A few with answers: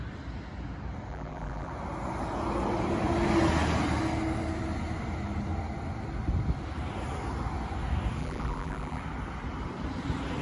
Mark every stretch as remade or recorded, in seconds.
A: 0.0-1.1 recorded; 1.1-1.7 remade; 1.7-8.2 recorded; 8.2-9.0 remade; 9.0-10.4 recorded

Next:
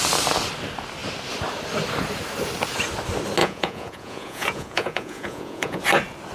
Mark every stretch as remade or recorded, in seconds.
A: 0.0-3.4 recorded; 3.4-5.8 remade; 5.8-6.3 recorded

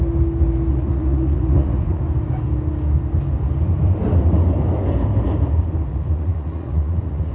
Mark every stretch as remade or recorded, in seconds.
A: 0.0-0.7 recorded; 0.7-2.0 remade; 2.0-5.9 recorded; 5.9-7.3 remade

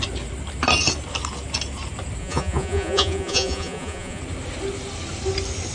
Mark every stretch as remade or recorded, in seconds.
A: 0.0-2.2 recorded; 2.2-4.2 remade; 4.2-5.7 recorded

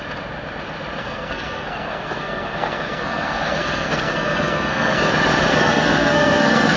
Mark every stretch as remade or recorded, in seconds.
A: 0.0-1.0 recorded; 1.0-5.1 remade; 5.1-5.5 recorded; 5.5-6.8 remade

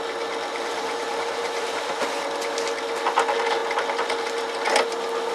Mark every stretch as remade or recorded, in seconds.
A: 0.0-0.5 recorded; 0.5-2.2 remade; 2.2-5.3 recorded